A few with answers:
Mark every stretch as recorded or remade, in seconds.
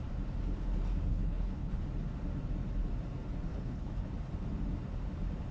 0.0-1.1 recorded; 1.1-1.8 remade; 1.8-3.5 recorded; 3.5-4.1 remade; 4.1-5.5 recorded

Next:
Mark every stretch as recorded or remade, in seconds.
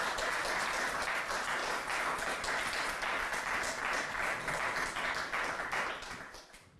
0.0-6.8 recorded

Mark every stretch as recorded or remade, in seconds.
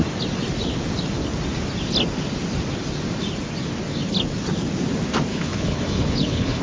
0.0-5.3 recorded; 5.3-6.6 remade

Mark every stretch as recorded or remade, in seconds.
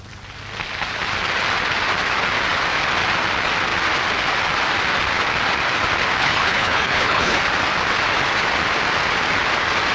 0.0-6.2 recorded; 6.2-7.4 remade; 7.4-9.9 recorded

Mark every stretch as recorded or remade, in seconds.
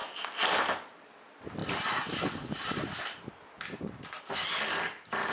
0.0-5.3 recorded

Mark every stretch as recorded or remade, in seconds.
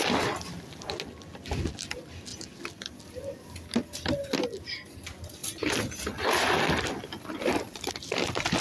0.0-8.6 recorded